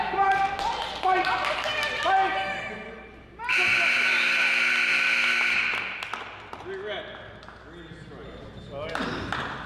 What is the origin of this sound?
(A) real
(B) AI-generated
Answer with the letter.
A